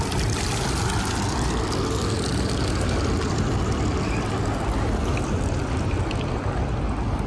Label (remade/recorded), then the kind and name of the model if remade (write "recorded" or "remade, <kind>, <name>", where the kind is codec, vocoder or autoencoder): recorded